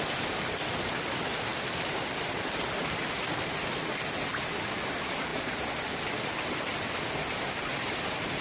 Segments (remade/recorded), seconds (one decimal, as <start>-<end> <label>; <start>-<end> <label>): 0.0-8.4 recorded